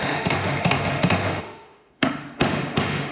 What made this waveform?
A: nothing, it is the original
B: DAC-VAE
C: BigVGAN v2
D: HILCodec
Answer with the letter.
B